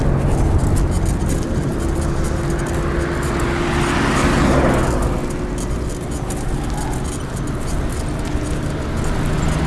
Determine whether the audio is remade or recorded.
recorded